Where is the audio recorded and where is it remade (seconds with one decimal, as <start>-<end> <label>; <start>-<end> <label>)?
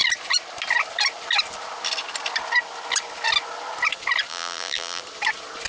0.0-4.3 recorded; 4.3-5.0 remade; 5.0-5.7 recorded